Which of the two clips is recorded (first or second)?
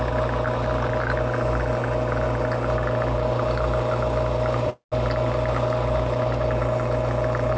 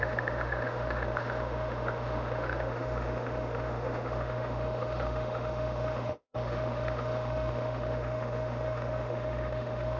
first